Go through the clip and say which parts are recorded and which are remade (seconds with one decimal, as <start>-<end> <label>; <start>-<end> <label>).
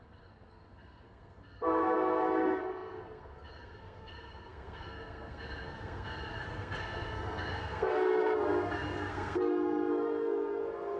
0.0-11.0 remade